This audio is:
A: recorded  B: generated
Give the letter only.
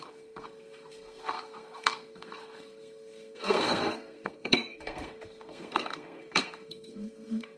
B